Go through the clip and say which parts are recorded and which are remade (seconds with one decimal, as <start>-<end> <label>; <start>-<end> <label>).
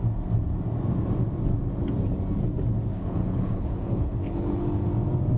0.0-2.9 recorded; 2.9-4.5 remade; 4.5-5.4 recorded